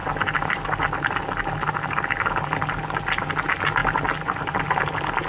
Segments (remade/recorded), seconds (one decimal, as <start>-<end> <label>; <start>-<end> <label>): 0.0-5.3 recorded